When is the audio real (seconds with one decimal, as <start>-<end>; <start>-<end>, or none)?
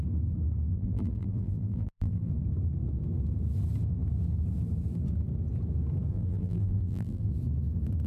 0.0-0.7; 2.3-6.1; 7.3-8.1